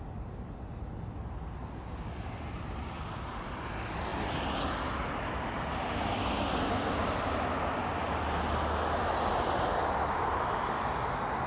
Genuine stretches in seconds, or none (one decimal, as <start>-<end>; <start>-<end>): 0.0-11.5

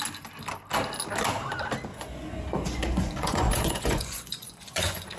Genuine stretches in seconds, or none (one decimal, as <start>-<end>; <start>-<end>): 0.0-1.9

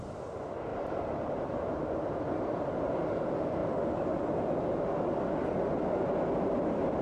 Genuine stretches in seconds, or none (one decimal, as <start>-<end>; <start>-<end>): 0.0-0.7; 1.5-7.0

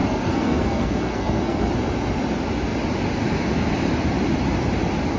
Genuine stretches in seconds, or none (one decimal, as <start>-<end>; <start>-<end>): 1.7-5.2

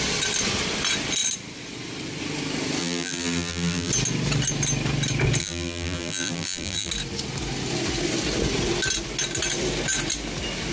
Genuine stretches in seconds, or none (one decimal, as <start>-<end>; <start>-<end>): 0.0-2.8; 3.9-5.4; 6.9-10.7

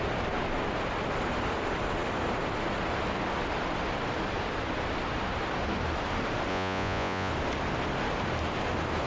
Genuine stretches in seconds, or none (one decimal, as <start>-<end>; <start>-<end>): 0.0-6.5; 7.3-9.1